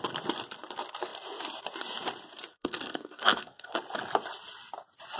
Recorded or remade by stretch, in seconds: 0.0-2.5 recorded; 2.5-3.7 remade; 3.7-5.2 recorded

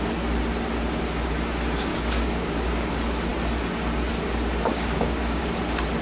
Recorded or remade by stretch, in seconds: 0.0-1.9 recorded; 1.9-2.9 remade; 2.9-4.7 recorded; 4.7-5.4 remade; 5.4-6.0 recorded